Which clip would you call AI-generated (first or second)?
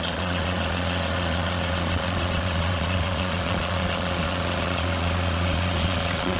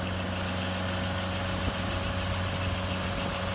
first